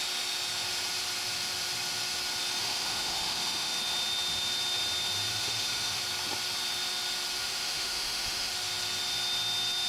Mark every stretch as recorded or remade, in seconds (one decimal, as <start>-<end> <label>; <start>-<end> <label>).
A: 0.0-2.6 recorded; 2.6-3.7 remade; 3.7-5.3 recorded; 5.3-6.0 remade; 6.0-7.4 recorded; 7.4-8.5 remade; 8.5-9.9 recorded